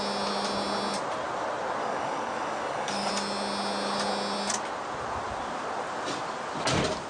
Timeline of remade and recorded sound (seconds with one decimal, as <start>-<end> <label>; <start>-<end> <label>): 0.0-1.8 recorded; 1.8-3.1 remade; 3.1-7.1 recorded